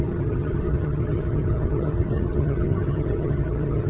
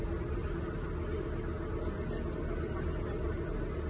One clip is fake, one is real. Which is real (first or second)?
second